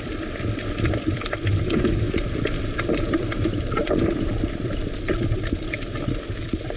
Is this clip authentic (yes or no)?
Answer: no